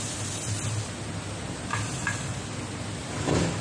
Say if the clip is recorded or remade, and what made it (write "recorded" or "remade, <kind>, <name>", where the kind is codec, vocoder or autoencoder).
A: recorded